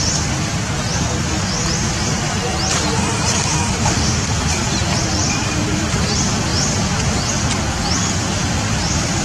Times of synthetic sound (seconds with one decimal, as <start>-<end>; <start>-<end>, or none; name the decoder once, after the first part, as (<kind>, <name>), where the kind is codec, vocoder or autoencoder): 3.8-4.4 (autoencoder, DAC-VAE)